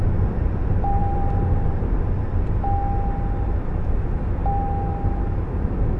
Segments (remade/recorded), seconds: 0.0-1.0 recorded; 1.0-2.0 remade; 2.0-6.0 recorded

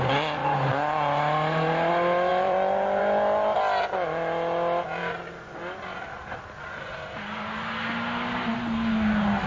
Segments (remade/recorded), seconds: 0.0-2.3 recorded; 2.3-3.0 remade; 3.0-9.5 recorded